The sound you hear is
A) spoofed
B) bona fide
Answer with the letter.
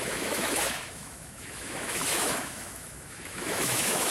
A